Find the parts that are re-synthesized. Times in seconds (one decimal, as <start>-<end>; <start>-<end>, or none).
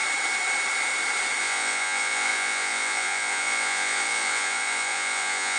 1.4-5.6